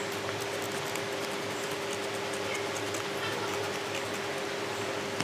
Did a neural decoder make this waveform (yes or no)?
no